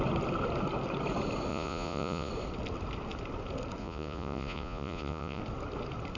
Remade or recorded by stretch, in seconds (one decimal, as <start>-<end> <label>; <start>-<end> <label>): 0.0-1.5 recorded; 1.5-2.3 remade; 2.3-3.8 recorded; 3.8-5.4 remade; 5.4-6.2 recorded